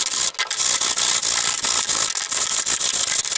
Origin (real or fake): real